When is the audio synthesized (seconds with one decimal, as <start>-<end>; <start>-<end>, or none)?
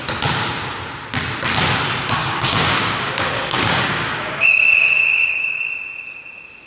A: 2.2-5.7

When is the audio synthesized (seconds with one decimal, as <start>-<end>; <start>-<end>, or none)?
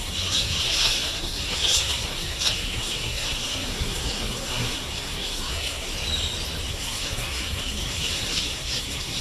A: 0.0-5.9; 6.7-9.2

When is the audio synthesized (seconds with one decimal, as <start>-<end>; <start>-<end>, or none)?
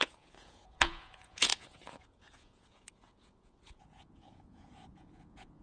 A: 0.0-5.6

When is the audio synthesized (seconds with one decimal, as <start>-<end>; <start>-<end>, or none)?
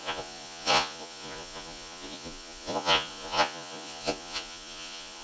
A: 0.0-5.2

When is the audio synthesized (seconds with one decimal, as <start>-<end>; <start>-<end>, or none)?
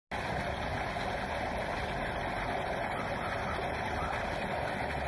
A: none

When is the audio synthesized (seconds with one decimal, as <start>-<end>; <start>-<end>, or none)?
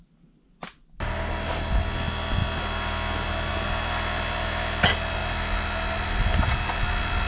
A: none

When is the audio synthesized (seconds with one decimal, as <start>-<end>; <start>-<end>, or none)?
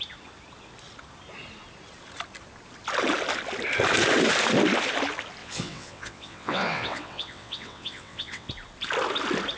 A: 5.4-8.5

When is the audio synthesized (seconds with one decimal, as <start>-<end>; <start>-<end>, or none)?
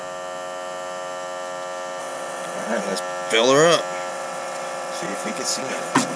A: 2.0-2.9; 4.1-6.2